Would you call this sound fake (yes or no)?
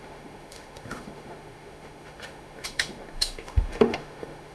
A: yes